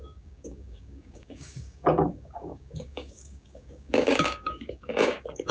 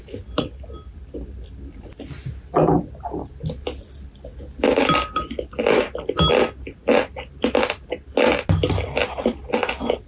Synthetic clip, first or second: first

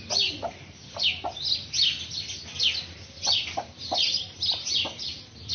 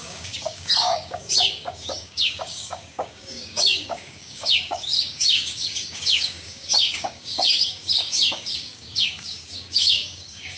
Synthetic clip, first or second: second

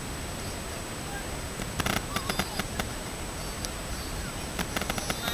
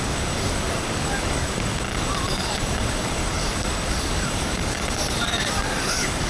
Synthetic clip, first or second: second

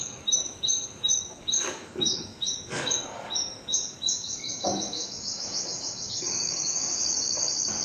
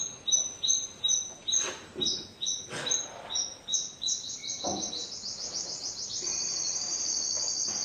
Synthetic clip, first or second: first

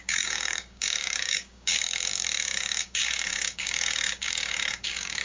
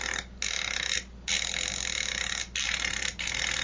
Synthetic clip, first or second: first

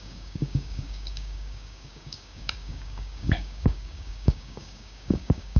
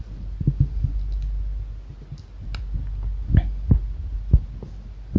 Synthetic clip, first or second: first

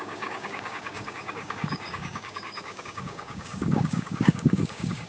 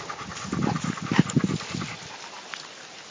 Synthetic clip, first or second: first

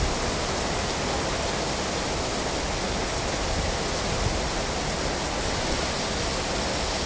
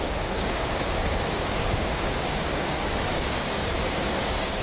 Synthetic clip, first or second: second